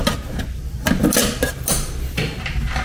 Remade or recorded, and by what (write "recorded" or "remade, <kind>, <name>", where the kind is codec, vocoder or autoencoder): recorded